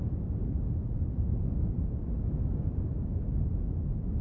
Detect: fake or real real